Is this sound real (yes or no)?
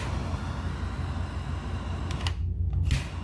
yes